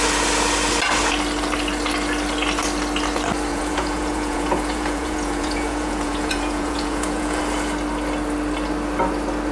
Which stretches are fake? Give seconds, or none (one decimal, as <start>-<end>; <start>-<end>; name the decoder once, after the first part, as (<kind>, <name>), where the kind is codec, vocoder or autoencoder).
3.5-7.4 (vocoder, Vocos)